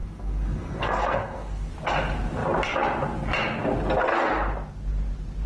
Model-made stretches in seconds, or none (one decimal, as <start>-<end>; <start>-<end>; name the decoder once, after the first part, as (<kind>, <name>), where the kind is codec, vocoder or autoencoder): 0.0-1.7 (codec, SNAC)